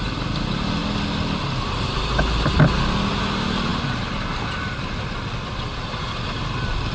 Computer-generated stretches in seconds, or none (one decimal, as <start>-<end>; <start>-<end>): none